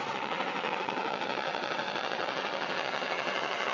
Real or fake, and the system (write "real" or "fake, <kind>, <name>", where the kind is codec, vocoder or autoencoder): fake, vocoder, WaveNeXt